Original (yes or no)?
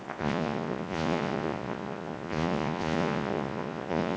no